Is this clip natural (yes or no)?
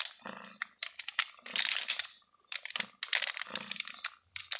yes